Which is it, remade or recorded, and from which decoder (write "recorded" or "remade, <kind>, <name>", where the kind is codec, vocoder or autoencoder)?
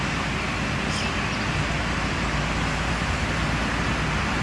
recorded